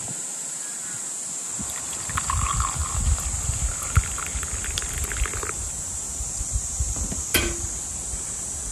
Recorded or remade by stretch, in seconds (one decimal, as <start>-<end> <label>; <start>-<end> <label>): 0.0-8.7 recorded